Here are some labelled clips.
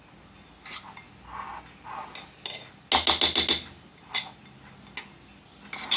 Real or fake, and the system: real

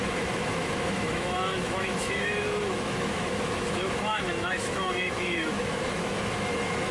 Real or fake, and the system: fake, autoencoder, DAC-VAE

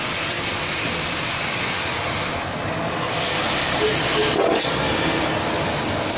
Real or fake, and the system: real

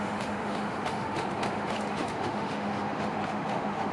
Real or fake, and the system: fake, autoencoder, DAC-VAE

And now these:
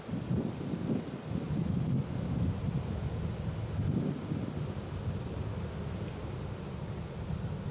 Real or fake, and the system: real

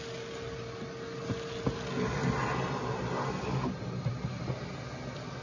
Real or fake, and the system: real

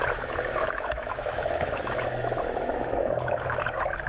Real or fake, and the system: fake, autoencoder, DAC-VAE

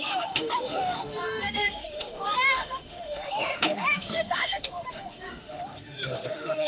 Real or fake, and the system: fake, autoencoder, DAC-VAE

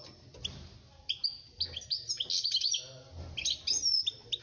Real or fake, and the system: real